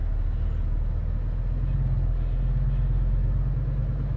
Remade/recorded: recorded